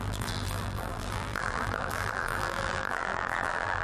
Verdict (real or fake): fake